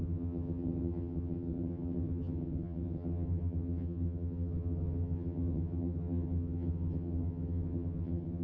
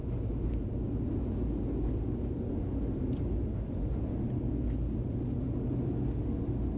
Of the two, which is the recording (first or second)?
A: second